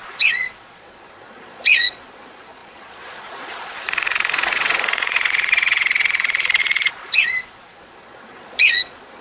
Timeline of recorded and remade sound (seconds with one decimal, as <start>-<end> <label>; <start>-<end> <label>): 0.0-9.2 remade